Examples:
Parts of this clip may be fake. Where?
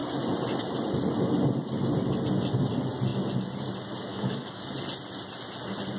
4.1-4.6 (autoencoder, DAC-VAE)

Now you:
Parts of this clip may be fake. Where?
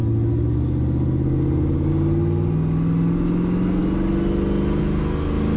none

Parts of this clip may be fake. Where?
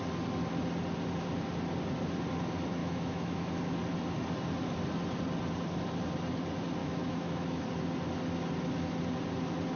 2.8-3.5 (autoencoder, DAC-VAE); 6.8-7.6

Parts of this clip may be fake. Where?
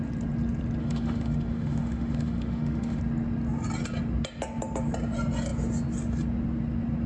0.8-3.0 (autoencoder, DAC-VAE)